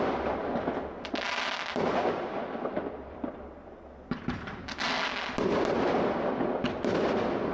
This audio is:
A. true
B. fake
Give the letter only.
A